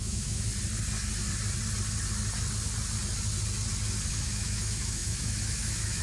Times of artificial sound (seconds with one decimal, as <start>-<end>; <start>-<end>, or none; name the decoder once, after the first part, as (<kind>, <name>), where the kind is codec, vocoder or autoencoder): 0.0-0.5 (autoencoder, DAC-VAE); 4.1-6.0